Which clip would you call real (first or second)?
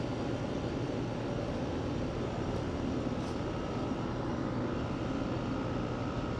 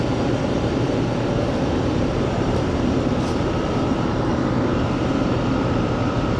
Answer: first